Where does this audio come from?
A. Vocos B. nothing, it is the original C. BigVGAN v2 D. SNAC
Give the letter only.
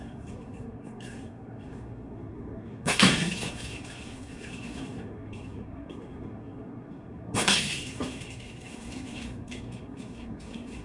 D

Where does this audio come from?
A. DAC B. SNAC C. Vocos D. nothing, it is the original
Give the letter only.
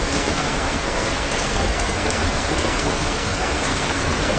B